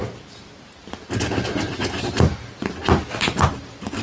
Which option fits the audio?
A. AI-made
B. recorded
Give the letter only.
B